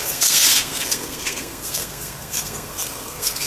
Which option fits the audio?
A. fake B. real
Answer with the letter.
A